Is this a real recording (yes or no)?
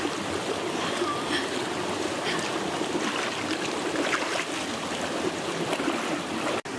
yes